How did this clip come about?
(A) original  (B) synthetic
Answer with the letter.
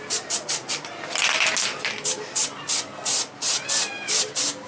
A